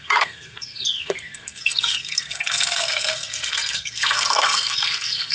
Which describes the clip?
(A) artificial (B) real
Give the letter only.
A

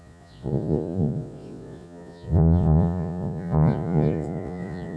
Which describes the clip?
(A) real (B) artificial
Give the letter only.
B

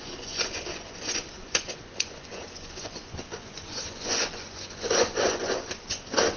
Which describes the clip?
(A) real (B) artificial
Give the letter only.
B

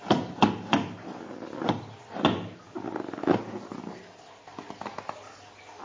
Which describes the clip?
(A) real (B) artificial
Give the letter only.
A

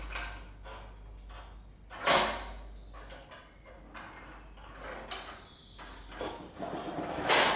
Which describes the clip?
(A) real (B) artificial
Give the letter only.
A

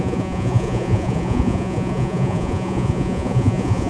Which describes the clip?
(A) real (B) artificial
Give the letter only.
B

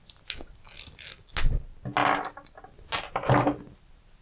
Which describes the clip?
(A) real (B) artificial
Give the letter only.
A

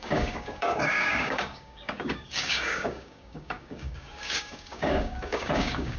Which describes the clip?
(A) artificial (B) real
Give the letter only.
A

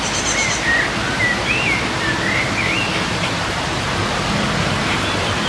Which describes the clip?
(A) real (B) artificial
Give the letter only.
A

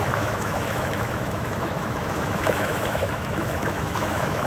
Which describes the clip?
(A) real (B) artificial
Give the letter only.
B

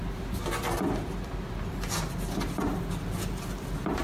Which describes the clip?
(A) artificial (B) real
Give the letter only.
B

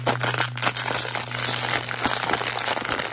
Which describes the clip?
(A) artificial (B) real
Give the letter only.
B